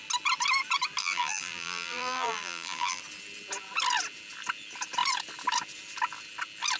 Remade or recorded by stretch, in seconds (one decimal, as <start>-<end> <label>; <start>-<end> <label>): 0.0-1.0 recorded; 1.0-3.0 remade; 3.0-6.8 recorded